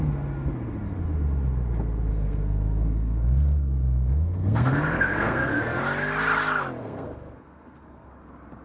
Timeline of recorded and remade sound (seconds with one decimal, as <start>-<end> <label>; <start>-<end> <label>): 0.0-2.1 recorded; 2.1-5.8 remade; 5.8-6.8 recorded; 6.8-8.1 remade; 8.1-8.6 recorded